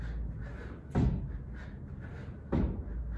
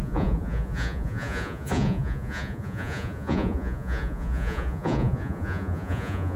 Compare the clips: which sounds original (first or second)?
first